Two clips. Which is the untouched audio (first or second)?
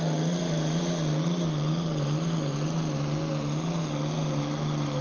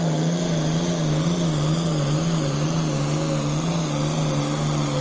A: second